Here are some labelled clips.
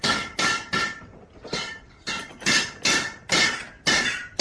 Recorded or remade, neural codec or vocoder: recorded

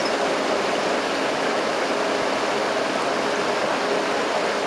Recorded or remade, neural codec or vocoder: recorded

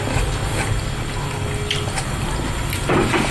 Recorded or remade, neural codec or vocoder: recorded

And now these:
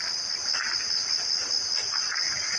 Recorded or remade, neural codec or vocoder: recorded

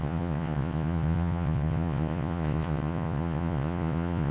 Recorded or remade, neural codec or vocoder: remade, vocoder, Vocos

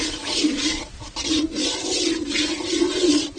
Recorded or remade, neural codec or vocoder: recorded